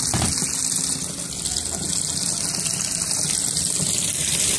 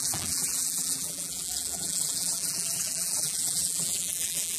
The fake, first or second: second